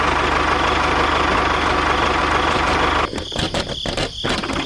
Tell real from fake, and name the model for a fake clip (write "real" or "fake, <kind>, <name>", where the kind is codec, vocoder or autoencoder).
real